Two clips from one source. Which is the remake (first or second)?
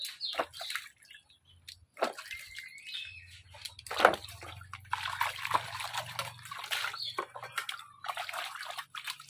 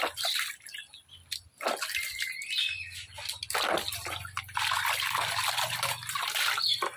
second